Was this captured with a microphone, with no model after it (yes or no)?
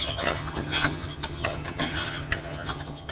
no